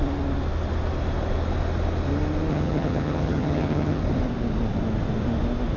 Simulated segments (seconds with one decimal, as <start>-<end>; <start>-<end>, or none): 2.5-4.0